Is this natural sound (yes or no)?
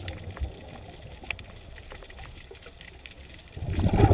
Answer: yes